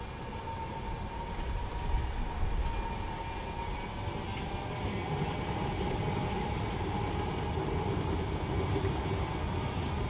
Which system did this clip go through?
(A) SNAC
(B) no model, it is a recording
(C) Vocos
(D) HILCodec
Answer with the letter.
B